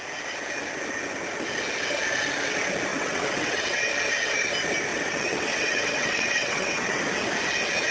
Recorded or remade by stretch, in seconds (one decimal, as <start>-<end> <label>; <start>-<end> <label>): 0.0-2.9 recorded; 2.9-3.9 remade; 3.9-4.9 recorded; 4.9-7.0 remade; 7.0-7.9 recorded